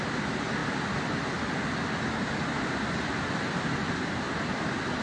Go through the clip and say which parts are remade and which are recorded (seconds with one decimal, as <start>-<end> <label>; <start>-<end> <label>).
0.0-5.0 recorded